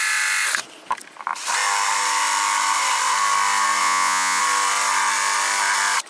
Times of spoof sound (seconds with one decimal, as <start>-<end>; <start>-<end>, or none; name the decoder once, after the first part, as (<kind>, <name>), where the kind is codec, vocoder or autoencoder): 3.8-4.4 (vocoder, Vocos)